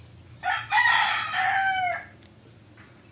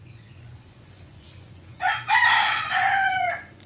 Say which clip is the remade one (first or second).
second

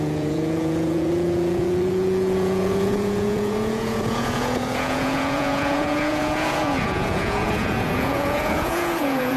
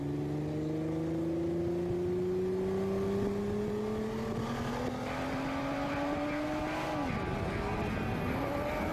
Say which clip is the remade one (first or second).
first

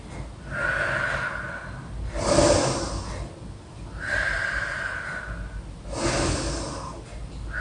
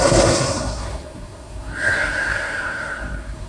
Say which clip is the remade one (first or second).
second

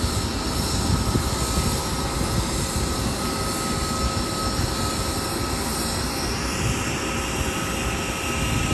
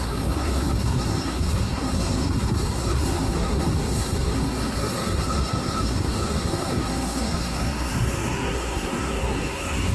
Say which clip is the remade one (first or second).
second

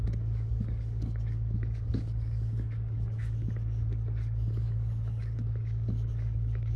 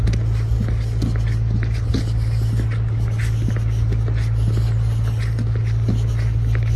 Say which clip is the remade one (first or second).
first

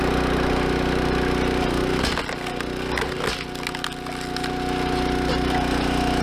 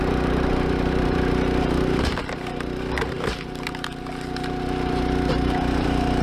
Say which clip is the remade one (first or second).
second